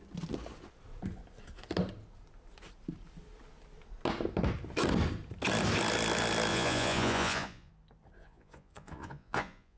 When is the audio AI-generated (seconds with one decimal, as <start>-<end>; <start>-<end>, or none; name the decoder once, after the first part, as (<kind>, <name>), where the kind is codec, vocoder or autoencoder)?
6.5-7.7 (vocoder, Vocos); 8.2-9.8